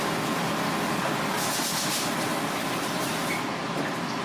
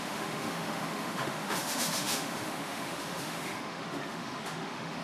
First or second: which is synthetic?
second